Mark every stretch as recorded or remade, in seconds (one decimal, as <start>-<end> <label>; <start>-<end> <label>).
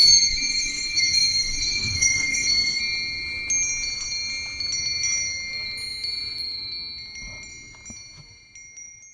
0.0-2.8 remade; 2.8-9.1 recorded